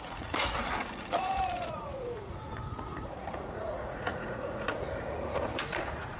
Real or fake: fake